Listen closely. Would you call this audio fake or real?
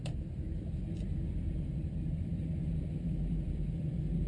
fake